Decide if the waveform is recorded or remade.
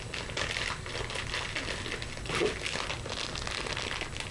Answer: recorded